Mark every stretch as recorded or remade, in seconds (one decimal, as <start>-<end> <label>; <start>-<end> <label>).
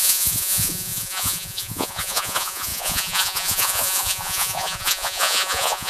0.0-5.9 remade